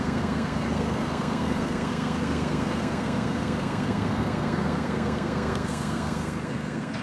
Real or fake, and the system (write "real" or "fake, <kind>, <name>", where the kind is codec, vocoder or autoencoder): fake, codec, SNAC